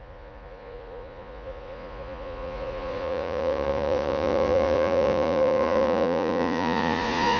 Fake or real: fake